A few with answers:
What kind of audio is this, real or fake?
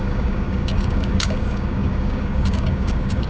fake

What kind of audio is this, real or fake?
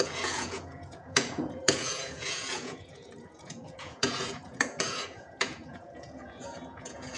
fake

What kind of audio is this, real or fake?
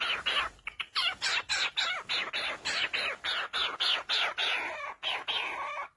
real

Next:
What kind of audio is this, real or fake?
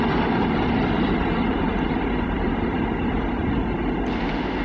real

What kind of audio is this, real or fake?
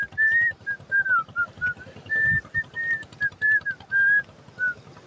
real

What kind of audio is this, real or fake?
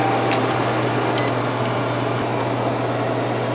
real